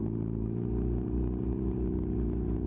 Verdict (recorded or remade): recorded